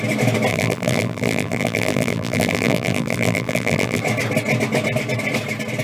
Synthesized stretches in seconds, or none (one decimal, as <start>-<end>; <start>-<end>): 0.5-4.0